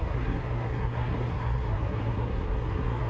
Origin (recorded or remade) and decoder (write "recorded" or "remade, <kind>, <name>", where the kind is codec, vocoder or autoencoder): remade, codec, SNAC